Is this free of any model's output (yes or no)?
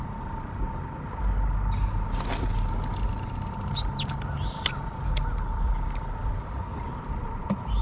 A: yes